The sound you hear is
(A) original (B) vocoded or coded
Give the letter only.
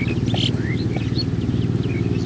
A